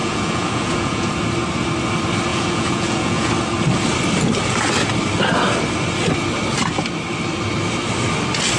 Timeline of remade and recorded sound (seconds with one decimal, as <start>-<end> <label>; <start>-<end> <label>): 0.0-1.1 remade; 1.1-2.3 recorded; 2.3-3.3 remade; 3.3-8.6 recorded

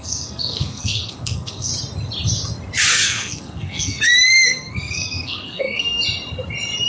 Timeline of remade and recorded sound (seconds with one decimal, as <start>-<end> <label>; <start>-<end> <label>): 0.0-1.7 remade; 1.7-2.9 recorded; 2.9-6.0 remade; 6.0-6.9 recorded

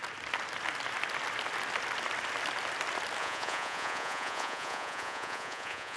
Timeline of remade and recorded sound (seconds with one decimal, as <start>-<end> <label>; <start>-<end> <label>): 0.0-3.2 recorded; 3.2-6.0 remade

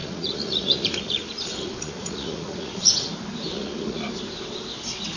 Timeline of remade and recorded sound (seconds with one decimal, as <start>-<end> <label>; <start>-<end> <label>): 0.0-3.1 remade; 3.1-3.5 recorded; 3.5-4.1 remade; 4.1-5.2 recorded

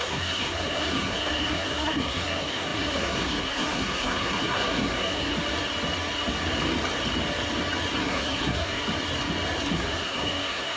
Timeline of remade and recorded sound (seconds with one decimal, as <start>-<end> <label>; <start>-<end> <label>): 0.0-5.3 remade; 5.3-8.0 recorded; 8.0-8.8 remade; 8.8-9.7 recorded; 9.7-10.8 remade

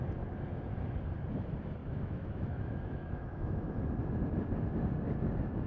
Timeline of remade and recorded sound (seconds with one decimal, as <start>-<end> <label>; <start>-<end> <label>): 0.0-1.8 recorded; 1.8-3.7 remade; 3.7-5.7 recorded

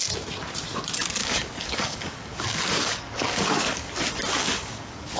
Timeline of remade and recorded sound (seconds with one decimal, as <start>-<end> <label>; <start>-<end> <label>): 0.0-1.2 recorded; 1.2-3.9 remade; 3.9-4.4 recorded; 4.4-5.2 remade